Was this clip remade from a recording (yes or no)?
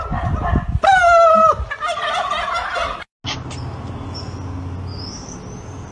no